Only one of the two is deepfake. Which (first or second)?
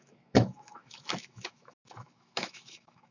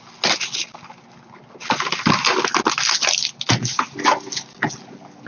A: first